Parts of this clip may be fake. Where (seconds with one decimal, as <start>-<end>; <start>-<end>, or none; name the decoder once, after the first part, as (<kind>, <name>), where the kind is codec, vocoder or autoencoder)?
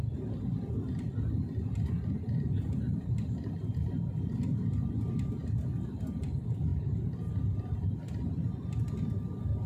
6.7-7.3 (vocoder, BigVGAN v2)